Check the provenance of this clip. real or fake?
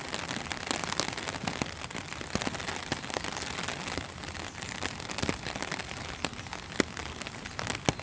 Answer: real